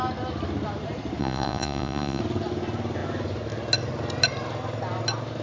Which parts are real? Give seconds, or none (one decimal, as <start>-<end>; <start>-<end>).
0.0-1.2; 2.2-5.4